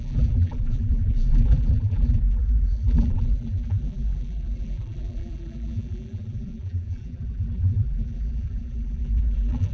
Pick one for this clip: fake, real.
fake